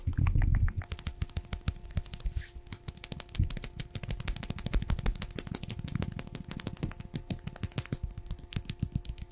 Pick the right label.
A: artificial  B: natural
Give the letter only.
B